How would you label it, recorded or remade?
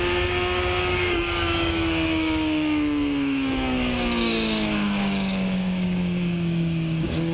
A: remade